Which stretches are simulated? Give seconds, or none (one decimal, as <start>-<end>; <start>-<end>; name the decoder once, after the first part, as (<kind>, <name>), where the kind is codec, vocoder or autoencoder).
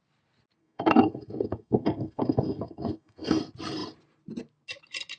0.6-3.4 (codec, SNAC)